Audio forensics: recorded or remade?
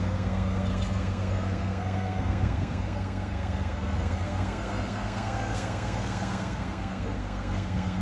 remade